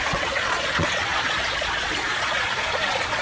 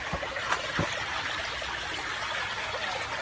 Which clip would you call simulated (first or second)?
first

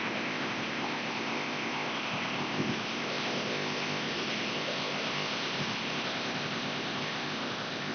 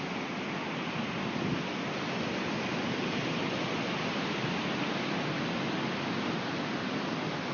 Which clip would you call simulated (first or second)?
first